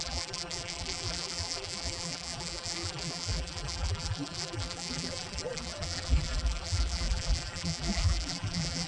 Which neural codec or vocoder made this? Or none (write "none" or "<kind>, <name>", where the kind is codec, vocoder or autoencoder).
vocoder, BigVGAN v2